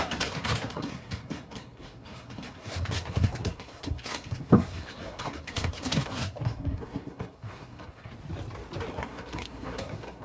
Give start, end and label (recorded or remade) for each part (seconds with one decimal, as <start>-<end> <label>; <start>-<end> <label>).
0.0-8.1 remade; 8.1-8.9 recorded; 8.9-10.2 remade